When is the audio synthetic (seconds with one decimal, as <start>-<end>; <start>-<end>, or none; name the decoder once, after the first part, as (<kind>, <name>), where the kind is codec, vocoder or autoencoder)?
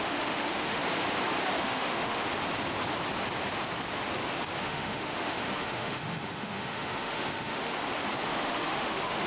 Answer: 0.0-0.8 (autoencoder, DAC-VAE); 1.6-2.3; 4.6-7.7; 8.2-9.3